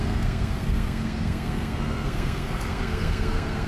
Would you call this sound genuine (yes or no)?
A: no